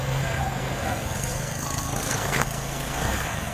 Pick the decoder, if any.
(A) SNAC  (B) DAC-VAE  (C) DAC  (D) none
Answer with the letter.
A